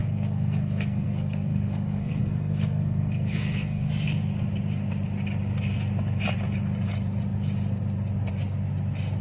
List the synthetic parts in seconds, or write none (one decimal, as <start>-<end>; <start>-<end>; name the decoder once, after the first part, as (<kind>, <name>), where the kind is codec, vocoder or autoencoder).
0.0-3.9 (codec, SNAC)